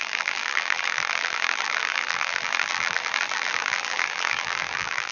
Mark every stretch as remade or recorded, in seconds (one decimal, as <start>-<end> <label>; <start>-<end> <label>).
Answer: 0.0-5.1 remade